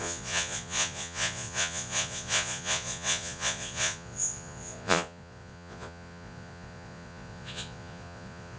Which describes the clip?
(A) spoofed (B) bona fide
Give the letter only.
A